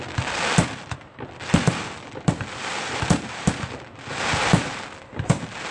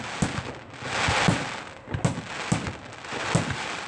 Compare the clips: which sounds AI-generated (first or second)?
first